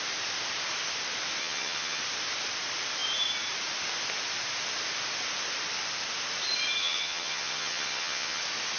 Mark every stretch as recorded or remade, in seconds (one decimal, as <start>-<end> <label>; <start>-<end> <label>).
0.0-1.4 recorded; 1.4-2.0 remade; 2.0-6.8 recorded; 6.8-8.4 remade; 8.4-8.8 recorded